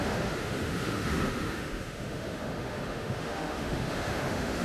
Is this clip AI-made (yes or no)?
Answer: yes